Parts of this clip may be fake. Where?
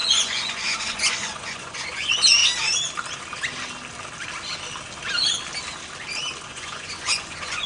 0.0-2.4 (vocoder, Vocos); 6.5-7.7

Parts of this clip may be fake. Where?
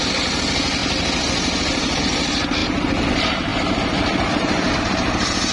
2.6-3.1 (vocoder, BigVGAN v2); 3.5-4.7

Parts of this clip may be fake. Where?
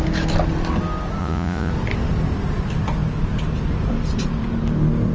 1.2-1.7 (vocoder, Vocos)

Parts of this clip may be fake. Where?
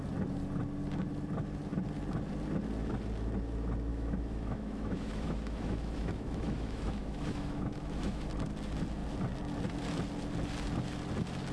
3.9-8.3 (autoencoder, DAC-VAE)